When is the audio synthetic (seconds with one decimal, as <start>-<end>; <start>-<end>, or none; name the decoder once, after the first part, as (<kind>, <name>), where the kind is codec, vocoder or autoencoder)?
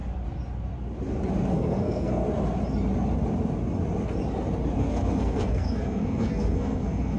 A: 1.5-2.2 (codec, SNAC); 4.8-7.2